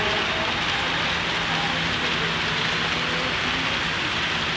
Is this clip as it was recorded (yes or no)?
yes